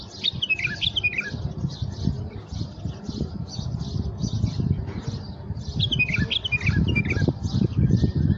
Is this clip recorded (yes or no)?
yes